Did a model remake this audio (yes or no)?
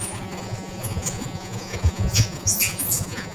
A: yes